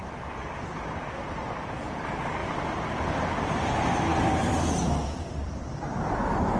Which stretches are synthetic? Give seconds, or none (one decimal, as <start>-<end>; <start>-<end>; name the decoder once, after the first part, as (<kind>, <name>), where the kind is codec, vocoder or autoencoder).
0.0-0.9 (vocoder, BigVGAN v2); 2.4-3.0; 4.1-6.0